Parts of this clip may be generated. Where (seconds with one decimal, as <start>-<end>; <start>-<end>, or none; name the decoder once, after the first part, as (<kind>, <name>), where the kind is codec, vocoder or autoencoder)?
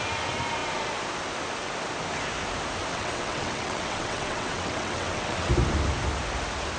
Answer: 2.9-5.5 (vocoder, WaveNeXt)